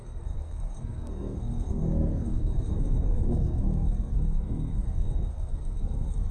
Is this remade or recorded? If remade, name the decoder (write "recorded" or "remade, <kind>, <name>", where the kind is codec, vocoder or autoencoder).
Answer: remade, codec, SNAC